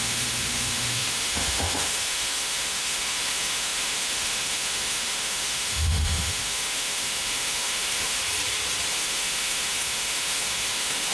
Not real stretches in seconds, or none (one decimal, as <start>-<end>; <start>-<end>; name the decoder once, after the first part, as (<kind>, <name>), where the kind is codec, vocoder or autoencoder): 0.0-8.2 (autoencoder, DAC-VAE); 8.9-11.1